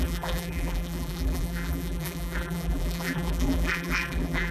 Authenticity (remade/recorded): remade